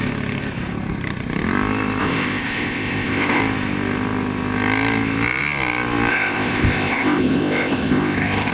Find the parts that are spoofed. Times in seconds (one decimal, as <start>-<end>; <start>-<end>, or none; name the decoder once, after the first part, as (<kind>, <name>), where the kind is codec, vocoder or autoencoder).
2.0-3.4 (codec, ZipCodec); 6.1-8.5